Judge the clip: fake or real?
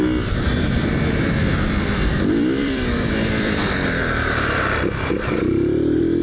fake